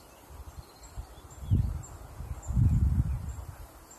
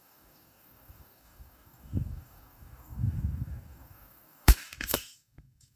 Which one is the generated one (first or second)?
second